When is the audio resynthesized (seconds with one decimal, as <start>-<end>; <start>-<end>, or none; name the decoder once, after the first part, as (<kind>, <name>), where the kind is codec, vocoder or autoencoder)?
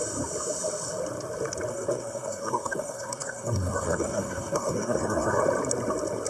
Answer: 1.7-5.4 (codec, SNAC)